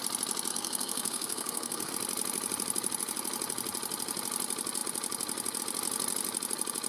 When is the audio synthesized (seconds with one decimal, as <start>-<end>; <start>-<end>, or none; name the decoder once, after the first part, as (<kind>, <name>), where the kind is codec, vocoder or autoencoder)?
0.5-1.9 (codec, SNAC)